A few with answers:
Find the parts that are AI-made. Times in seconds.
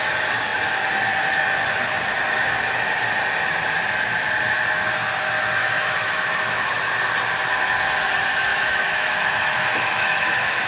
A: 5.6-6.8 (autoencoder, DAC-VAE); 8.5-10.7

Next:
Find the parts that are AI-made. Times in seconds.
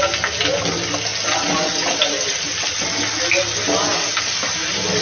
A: none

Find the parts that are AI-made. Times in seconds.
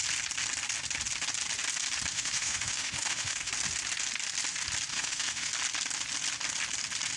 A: 2.1-3.5 (autoencoder, DAC-VAE); 4.9-5.5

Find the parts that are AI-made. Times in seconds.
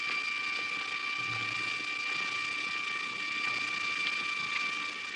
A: none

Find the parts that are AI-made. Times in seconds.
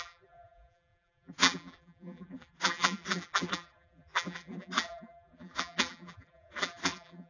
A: 0.0-7.3 (vocoder, BigVGAN v2)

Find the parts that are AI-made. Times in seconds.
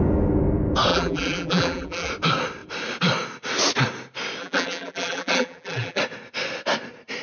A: 0.9-2.1 (vocoder, BigVGAN v2); 4.4-6.0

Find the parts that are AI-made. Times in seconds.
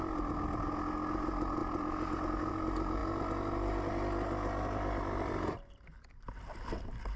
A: 1.6-2.5 (vocoder, BigVGAN v2)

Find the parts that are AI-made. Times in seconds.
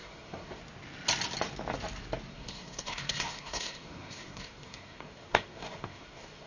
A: 0.0-0.6 (codec, SNAC); 2.3-6.5